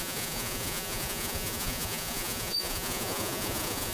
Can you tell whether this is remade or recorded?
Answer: remade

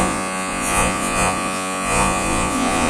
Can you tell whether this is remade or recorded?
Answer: remade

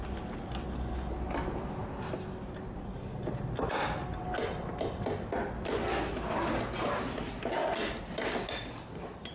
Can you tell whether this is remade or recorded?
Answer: recorded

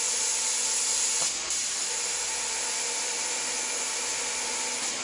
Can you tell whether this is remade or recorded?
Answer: recorded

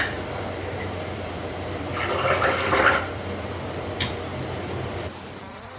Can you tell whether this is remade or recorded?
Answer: remade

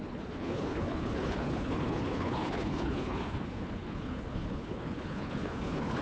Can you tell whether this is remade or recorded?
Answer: remade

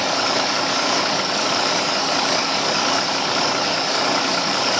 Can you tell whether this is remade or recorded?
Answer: remade